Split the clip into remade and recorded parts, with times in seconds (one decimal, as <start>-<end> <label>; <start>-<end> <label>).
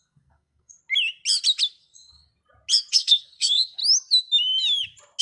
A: 0.0-0.8 remade; 0.8-1.8 recorded; 1.8-2.3 remade; 2.3-2.9 recorded; 2.9-3.8 remade; 3.8-5.2 recorded